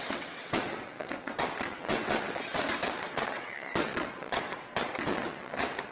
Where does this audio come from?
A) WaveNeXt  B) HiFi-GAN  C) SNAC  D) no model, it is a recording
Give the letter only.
A